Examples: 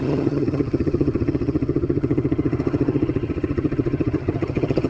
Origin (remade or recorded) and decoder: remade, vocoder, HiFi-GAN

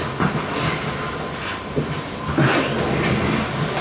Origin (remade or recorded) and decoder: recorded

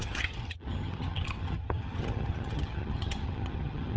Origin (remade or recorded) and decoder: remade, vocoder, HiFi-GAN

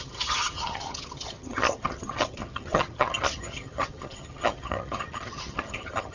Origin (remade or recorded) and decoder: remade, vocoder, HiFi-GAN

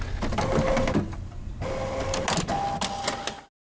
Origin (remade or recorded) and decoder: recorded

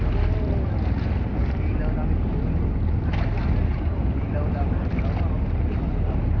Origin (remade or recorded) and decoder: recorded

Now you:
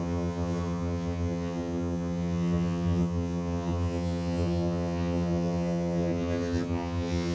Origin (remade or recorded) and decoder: remade, vocoder, HiFi-GAN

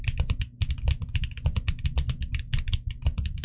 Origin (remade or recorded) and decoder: recorded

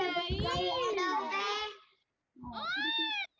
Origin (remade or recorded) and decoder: recorded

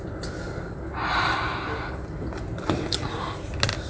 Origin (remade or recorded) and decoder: recorded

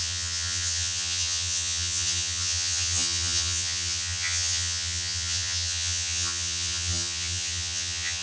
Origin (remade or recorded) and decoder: remade, vocoder, HiFi-GAN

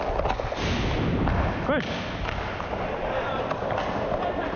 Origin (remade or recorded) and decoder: recorded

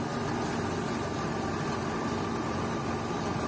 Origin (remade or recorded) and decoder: recorded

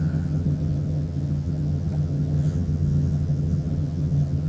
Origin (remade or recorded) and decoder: remade, vocoder, HiFi-GAN